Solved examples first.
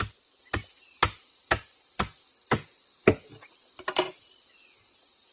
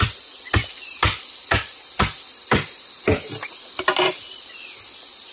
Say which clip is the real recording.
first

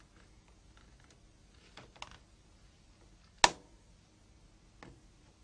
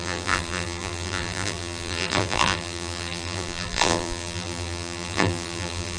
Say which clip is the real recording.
first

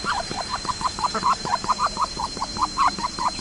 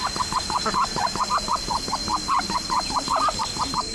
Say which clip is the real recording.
second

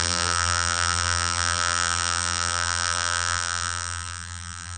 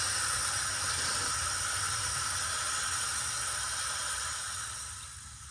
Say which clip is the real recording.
second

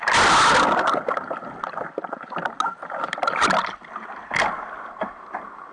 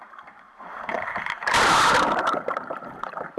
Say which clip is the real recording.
first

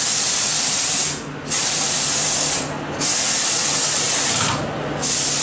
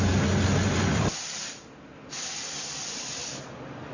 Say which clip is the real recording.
first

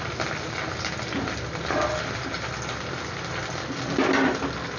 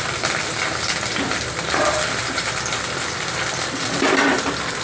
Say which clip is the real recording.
first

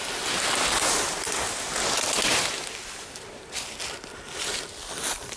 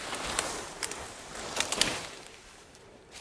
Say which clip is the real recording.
first